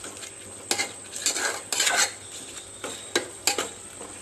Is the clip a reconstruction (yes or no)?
no